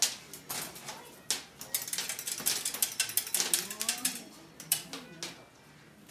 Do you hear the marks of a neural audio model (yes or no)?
no